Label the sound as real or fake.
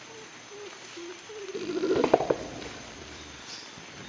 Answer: fake